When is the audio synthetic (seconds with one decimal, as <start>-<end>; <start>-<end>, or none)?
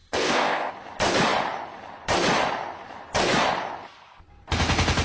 0.0-0.7